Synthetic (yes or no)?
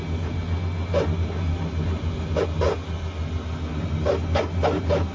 no